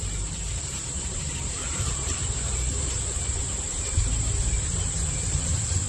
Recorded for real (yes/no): no